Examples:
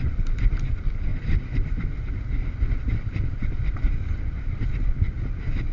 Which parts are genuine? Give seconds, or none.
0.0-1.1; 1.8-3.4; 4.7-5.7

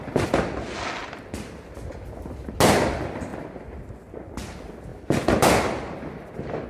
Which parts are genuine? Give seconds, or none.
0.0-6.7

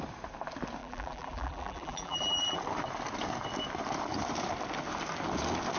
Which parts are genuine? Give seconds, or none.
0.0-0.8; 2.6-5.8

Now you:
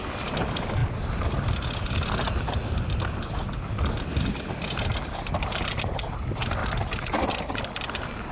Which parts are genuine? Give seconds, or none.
0.0-8.3

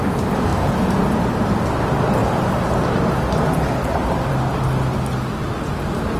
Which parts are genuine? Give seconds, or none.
0.0-0.5; 1.5-2.2; 4.4-6.2

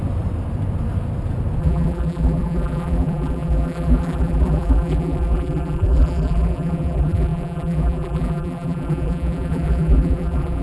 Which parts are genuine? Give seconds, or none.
0.0-1.6